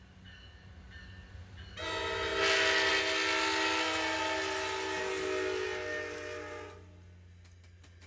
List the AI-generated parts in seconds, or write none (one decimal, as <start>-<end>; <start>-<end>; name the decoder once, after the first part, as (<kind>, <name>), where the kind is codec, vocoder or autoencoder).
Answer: none